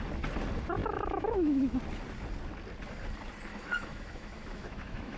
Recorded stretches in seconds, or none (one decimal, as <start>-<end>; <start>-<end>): 0.0-0.8; 1.8-3.5